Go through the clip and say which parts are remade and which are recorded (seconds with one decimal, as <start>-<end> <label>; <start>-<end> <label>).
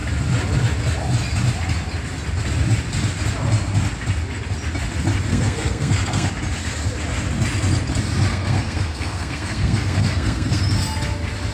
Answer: 0.0-5.3 recorded; 5.3-6.3 remade; 6.3-8.3 recorded; 8.3-10.6 remade; 10.6-11.5 recorded